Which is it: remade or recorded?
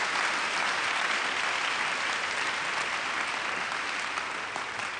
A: recorded